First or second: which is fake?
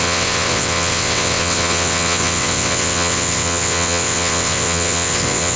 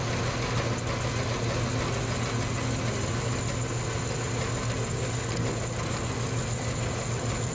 first